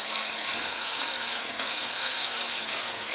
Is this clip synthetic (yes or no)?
yes